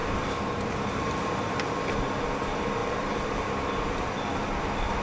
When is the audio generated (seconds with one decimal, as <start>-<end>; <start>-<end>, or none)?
0.0-1.6; 2.8-3.9